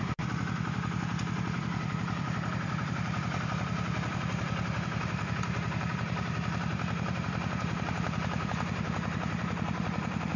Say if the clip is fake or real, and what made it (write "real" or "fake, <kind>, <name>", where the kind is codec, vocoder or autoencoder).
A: fake, vocoder, BigVGAN v2